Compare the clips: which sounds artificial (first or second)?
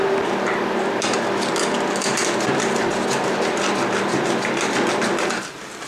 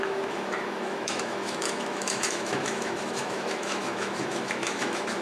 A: second